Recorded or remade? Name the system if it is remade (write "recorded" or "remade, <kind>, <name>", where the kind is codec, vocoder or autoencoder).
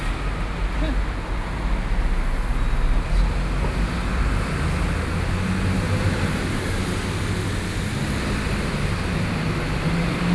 recorded